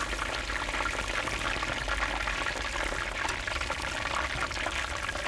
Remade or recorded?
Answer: recorded